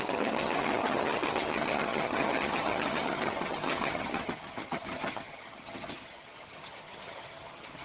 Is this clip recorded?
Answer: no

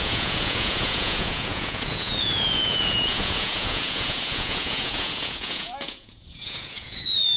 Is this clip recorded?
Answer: no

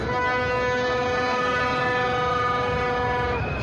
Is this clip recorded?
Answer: yes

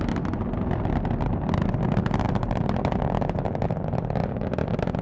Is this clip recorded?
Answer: yes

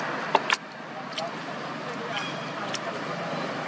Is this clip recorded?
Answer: yes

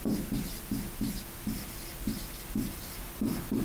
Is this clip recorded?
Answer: yes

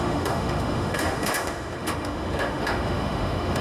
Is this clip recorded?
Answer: no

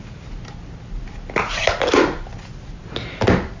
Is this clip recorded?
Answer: yes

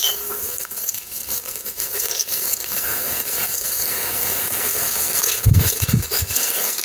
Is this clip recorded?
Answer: no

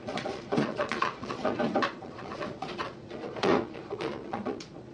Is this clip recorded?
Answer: no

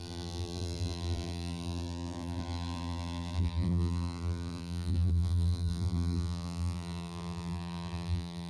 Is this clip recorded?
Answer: no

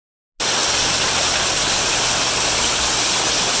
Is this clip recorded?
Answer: yes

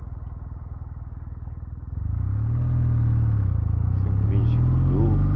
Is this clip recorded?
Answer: yes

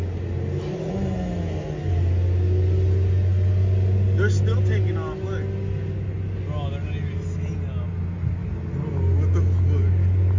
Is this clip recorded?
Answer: yes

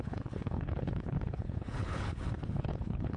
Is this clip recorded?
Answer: no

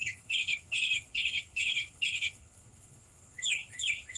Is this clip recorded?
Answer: no